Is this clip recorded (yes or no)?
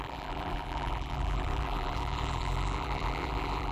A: no